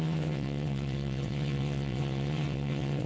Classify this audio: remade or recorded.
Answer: remade